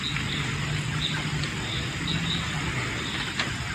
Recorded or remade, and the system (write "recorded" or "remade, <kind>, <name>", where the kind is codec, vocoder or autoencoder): recorded